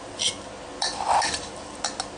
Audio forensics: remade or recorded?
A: recorded